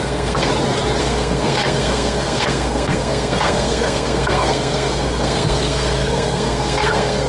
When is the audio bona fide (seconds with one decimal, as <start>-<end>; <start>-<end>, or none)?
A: 0.5-1.0